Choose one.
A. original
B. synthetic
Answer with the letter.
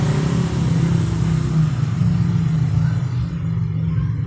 A